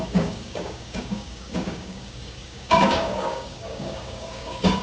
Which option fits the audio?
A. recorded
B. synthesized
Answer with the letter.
B